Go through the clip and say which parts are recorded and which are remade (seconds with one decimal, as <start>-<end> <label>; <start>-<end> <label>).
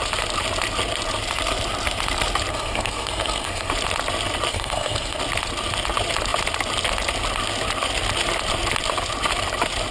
0.0-2.5 recorded; 2.5-3.7 remade; 3.7-4.5 recorded; 4.5-5.2 remade; 5.2-9.9 recorded